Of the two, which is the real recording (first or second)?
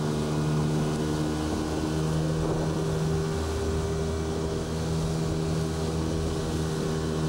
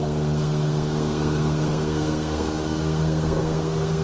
first